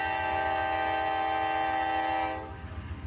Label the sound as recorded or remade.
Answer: recorded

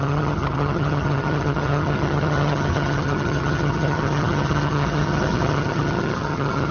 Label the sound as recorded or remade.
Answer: remade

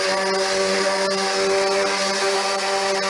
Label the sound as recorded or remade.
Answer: recorded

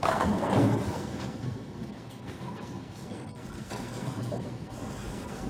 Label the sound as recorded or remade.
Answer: remade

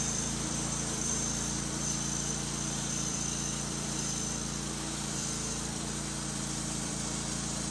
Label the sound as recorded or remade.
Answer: remade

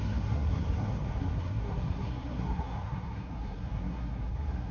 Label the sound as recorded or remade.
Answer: remade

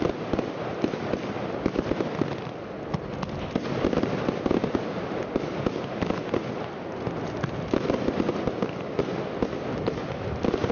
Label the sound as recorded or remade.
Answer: recorded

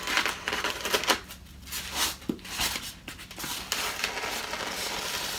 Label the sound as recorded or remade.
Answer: recorded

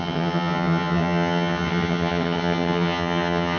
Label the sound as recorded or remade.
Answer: remade